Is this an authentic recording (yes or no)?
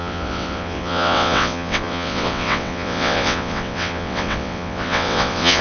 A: no